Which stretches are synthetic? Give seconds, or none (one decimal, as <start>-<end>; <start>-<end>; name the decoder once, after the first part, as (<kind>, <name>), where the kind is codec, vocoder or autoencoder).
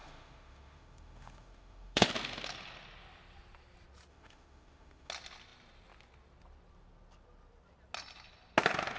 0.0-2.1 (autoencoder, DAC-VAE); 4.1-5.1